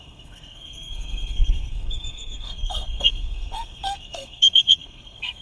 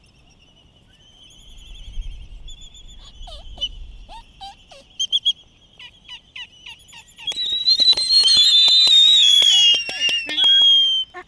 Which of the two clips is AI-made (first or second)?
first